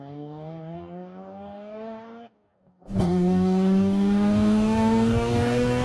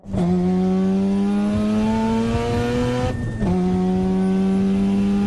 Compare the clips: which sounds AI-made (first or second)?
first